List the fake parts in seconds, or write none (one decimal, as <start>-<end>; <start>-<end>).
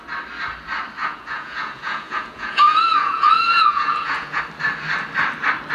1.0-4.4